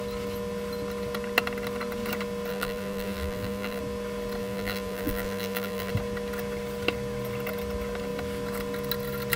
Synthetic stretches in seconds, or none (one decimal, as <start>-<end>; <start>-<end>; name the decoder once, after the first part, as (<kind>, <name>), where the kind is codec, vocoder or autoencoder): 2.5-3.8 (vocoder, BigVGAN v2); 4.4-5.9